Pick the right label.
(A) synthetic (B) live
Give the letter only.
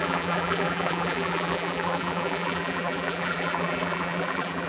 A